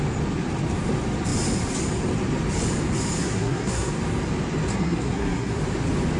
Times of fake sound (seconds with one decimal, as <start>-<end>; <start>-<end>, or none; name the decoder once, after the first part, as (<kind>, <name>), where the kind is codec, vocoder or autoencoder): 3.2-3.9 (codec, SNAC); 4.7-5.6